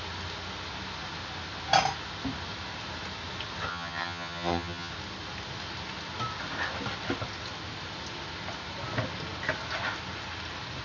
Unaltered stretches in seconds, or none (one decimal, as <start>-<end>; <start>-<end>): 0.0-3.7; 4.9-10.8